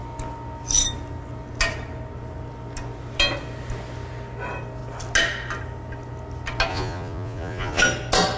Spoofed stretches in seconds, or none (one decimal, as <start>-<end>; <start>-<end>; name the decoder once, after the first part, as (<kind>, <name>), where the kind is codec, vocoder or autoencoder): 6.7-7.8 (vocoder, Vocos)